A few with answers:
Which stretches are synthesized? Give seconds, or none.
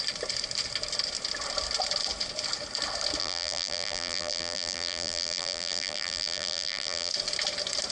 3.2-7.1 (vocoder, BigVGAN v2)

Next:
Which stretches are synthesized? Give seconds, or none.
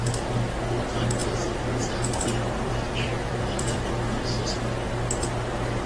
1.2-4.3 (vocoder, BigVGAN v2)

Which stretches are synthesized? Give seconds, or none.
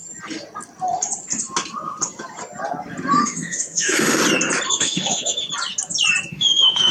3.2-4.2 (autoencoder, DAC-VAE); 4.7-5.4; 6.3-6.9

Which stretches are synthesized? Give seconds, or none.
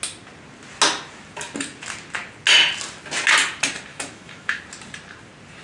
3.9-4.6 (autoencoder, DAC-VAE)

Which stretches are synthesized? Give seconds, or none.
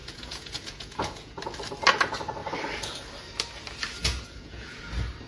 0.0-1.4 (vocoder, Vocos); 4.0-4.8